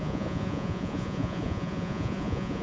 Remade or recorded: remade